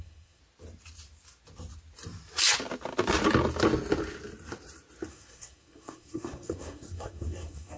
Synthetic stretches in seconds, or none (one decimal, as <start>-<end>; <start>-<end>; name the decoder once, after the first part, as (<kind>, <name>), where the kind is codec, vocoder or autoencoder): 0.0-0.4 (codec, SNAC); 5.1-7.8